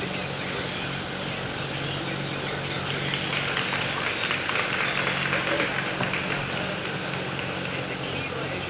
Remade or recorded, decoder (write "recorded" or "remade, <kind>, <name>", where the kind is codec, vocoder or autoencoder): recorded